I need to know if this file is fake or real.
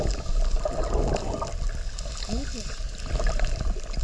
real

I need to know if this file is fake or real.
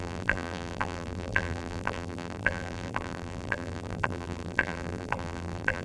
fake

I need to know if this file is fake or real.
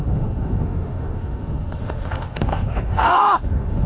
fake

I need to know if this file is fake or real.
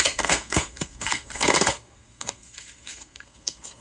fake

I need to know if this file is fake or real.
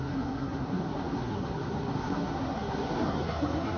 fake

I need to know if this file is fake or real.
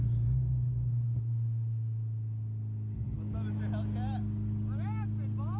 real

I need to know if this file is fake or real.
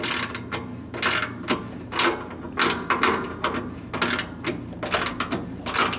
real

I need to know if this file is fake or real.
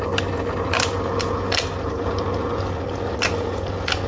real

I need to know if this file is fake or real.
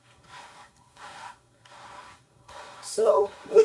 fake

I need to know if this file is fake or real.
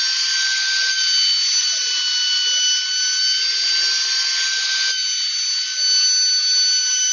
real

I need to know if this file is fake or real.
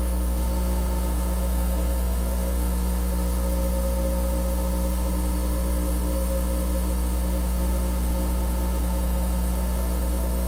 fake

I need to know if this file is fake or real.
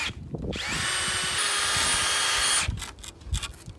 real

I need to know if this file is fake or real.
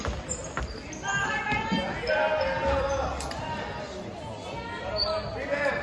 real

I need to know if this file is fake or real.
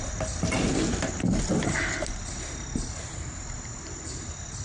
real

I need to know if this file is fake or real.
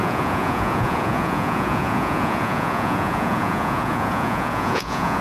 fake